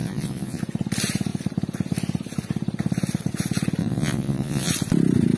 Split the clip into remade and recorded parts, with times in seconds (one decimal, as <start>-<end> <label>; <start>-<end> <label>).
0.0-0.6 remade; 0.6-3.8 recorded; 3.8-4.7 remade; 4.7-5.4 recorded